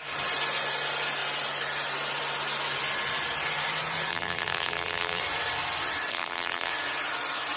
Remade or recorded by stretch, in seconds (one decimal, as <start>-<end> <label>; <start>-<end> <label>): 0.0-4.1 recorded; 4.1-5.2 remade; 5.2-6.1 recorded; 6.1-6.7 remade; 6.7-7.6 recorded